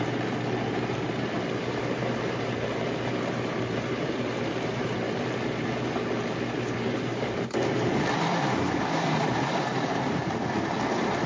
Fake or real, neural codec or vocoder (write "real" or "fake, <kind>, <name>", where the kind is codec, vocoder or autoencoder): fake, vocoder, BigVGAN v2